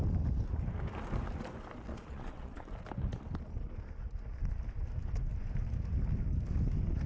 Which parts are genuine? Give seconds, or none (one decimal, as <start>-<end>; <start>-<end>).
0.0-1.9; 2.7-7.1